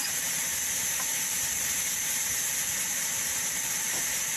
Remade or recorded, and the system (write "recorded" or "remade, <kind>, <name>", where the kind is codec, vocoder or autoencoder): remade, vocoder, BigVGAN v2